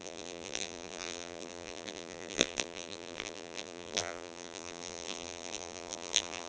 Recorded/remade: remade